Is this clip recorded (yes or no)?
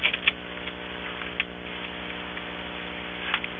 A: yes